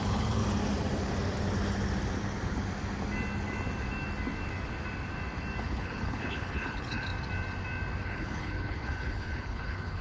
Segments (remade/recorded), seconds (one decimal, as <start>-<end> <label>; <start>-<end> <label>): 0.0-0.4 remade; 0.4-5.6 recorded; 5.6-7.1 remade; 7.1-8.0 recorded; 8.0-10.0 remade